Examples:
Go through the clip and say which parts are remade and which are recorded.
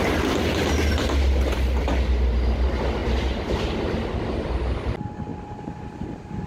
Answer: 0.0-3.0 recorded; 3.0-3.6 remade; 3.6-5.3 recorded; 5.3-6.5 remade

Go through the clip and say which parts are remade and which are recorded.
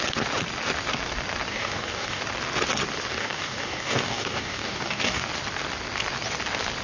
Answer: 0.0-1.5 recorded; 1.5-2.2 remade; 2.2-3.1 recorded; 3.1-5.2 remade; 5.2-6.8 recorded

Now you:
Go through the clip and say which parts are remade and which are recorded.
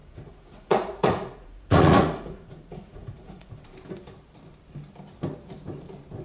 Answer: 0.0-3.5 remade; 3.5-6.2 recorded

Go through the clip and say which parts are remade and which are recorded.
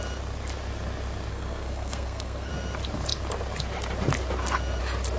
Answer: 0.0-1.3 recorded; 1.3-2.5 remade; 2.5-5.2 recorded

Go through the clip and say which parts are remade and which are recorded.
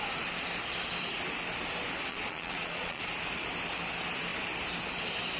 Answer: 0.0-2.1 recorded; 2.1-3.0 remade; 3.0-5.4 recorded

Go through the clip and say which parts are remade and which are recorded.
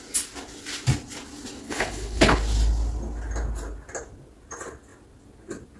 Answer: 0.0-1.6 recorded; 1.6-2.4 remade; 2.4-5.8 recorded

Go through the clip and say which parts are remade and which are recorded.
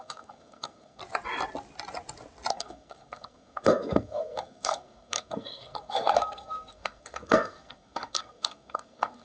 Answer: 0.0-1.0 remade; 1.0-2.5 recorded; 2.5-9.2 remade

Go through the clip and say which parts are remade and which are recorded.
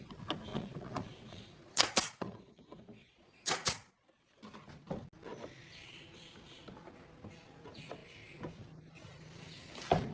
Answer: 0.0-0.5 recorded; 0.5-3.7 remade; 3.7-10.1 recorded